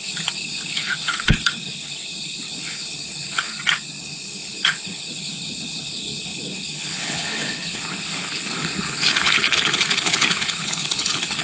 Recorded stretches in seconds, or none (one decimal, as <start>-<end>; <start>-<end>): 3.5-4.0